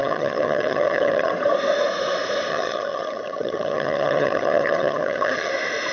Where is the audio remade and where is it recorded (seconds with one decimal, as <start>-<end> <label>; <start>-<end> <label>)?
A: 0.0-1.3 remade; 1.3-2.5 recorded; 2.5-5.5 remade; 5.5-5.9 recorded